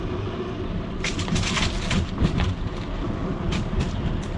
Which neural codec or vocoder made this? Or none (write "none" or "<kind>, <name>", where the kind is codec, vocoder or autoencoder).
vocoder, BigVGAN v2